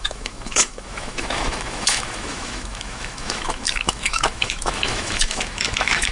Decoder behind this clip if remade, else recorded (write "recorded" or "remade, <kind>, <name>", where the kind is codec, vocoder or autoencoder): remade, autoencoder, DAC-VAE